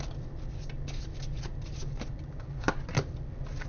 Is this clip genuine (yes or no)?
yes